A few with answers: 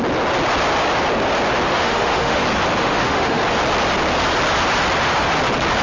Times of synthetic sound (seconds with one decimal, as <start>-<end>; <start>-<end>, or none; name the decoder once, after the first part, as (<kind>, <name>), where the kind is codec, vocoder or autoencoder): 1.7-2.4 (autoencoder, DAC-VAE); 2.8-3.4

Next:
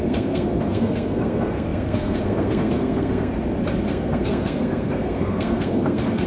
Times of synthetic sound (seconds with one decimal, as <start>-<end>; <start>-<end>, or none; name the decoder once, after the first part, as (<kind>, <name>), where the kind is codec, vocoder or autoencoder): 0.0-3.3 (codec, SNAC); 3.9-6.3

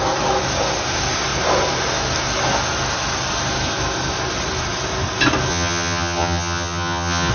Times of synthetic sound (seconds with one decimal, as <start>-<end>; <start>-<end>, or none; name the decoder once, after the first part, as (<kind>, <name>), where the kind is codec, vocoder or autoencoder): 5.5-7.3 (vocoder, HiFi-GAN)

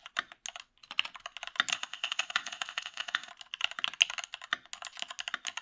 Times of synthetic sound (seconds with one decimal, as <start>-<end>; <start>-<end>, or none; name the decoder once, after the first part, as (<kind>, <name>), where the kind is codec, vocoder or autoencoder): 1.7-3.3 (codec, ZipCodec)